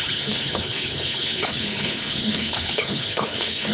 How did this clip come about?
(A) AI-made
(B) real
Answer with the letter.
A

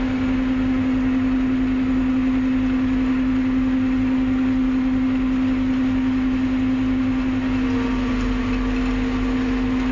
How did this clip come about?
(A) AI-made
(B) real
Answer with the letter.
B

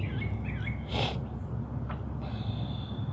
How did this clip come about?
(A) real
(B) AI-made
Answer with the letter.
A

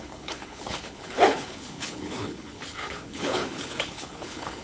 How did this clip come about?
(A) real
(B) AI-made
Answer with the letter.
B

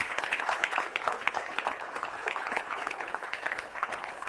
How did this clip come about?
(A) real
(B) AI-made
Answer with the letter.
B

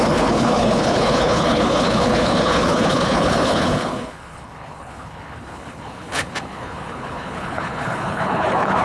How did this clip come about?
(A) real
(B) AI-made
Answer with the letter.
B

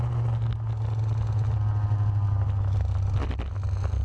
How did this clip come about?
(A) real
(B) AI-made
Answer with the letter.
A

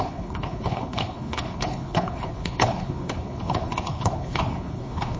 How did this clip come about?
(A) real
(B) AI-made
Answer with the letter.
B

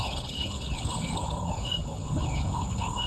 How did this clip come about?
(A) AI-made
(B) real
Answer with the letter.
A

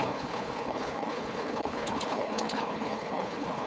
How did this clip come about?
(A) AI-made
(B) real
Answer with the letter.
A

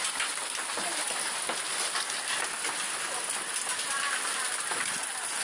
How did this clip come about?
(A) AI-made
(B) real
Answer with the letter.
B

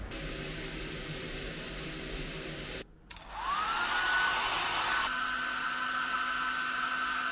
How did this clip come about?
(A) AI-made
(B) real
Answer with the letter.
B